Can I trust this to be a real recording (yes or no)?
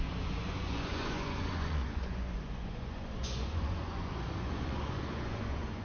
no